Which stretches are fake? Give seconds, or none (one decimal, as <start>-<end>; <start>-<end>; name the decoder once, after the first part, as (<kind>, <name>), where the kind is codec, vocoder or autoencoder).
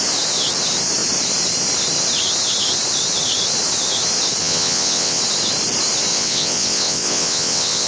4.4-5.2 (vocoder, WaveNeXt); 6.1-7.9